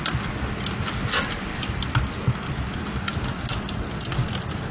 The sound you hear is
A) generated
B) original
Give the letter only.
B